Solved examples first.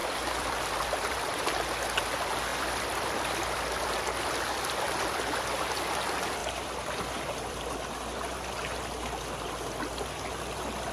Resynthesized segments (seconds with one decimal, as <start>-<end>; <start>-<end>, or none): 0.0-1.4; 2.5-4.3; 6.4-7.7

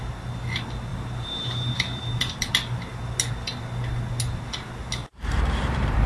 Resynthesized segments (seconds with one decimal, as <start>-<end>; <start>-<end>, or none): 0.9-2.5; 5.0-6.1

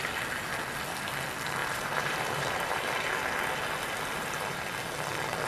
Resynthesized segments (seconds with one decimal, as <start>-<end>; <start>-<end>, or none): 1.6-2.8

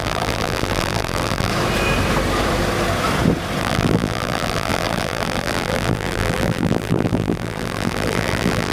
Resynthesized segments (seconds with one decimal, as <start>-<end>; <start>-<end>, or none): 0.0-1.5; 3.6-8.7

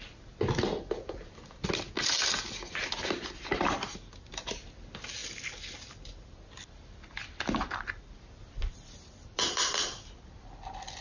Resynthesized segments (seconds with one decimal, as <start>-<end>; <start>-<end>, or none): none